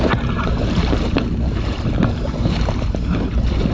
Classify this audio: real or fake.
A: fake